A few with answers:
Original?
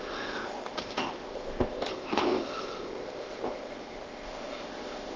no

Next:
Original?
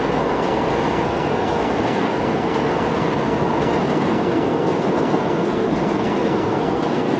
no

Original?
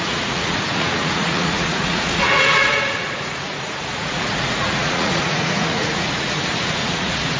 no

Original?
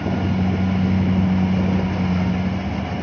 yes